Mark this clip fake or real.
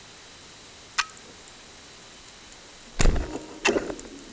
real